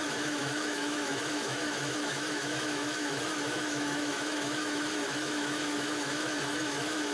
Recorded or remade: remade